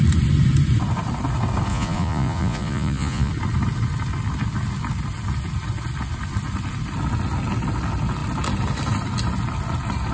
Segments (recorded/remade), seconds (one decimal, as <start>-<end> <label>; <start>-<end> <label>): 0.0-1.7 recorded; 1.7-3.3 remade; 3.3-10.1 recorded

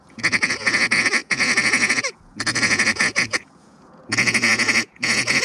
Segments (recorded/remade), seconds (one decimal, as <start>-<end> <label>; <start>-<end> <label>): 0.0-5.4 remade

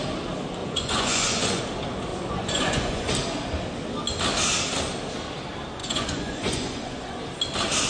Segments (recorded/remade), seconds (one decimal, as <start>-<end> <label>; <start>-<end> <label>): 0.0-0.6 recorded; 0.6-1.6 remade; 1.6-2.1 recorded; 2.1-3.1 remade; 3.1-5.8 recorded; 5.8-7.2 remade; 7.2-7.9 recorded

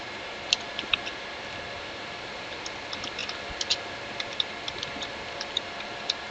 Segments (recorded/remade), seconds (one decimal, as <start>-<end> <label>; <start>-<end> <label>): 0.0-6.3 recorded

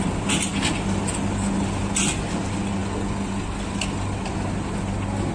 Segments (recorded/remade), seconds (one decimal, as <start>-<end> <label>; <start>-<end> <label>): 0.0-5.3 recorded

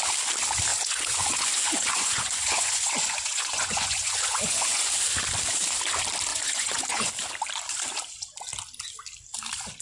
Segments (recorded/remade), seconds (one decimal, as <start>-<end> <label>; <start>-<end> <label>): 0.0-0.7 recorded; 0.7-4.9 remade; 4.9-6.3 recorded; 6.3-7.1 remade; 7.1-9.8 recorded

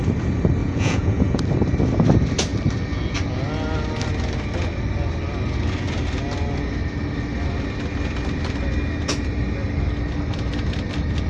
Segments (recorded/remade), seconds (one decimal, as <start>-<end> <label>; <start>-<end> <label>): 0.0-0.6 recorded; 0.6-1.4 remade; 1.4-11.3 recorded

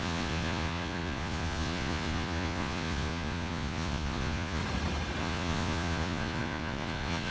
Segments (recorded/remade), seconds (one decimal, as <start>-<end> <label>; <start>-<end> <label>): 0.0-4.6 remade; 4.6-5.2 recorded; 5.2-7.3 remade